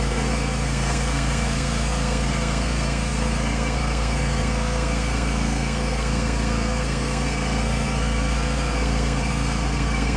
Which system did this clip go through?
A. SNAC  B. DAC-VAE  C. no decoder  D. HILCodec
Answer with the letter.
A